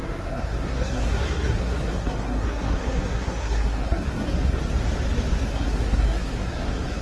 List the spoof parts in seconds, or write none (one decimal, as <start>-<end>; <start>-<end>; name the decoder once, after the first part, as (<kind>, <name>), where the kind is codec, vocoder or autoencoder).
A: 0.0-4.6 (codec, SNAC); 5.4-7.0